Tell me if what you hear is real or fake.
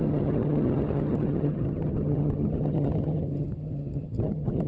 fake